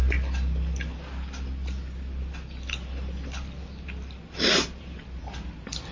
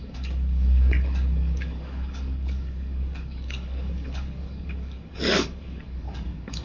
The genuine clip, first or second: first